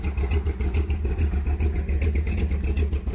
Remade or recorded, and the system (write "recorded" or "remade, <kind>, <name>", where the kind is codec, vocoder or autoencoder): recorded